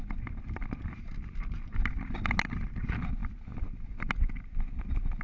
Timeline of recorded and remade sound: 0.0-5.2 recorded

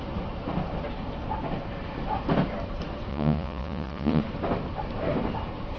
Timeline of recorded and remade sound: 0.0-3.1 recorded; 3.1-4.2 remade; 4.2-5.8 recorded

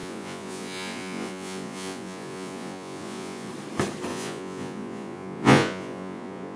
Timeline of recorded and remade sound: 0.0-3.5 remade; 3.5-4.1 recorded; 4.1-6.6 remade

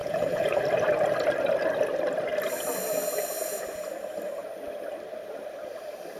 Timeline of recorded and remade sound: 0.0-0.6 remade; 0.6-6.2 recorded